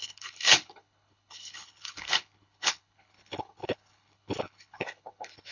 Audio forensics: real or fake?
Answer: fake